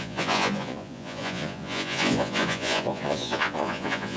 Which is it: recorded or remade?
remade